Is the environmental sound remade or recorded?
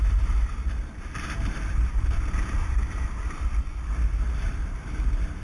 remade